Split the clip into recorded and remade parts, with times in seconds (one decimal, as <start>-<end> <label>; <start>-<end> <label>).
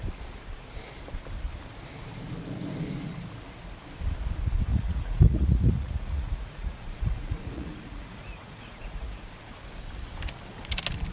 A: 0.0-4.7 recorded; 4.7-9.5 remade; 9.5-11.1 recorded